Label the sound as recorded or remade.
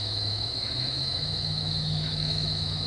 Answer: remade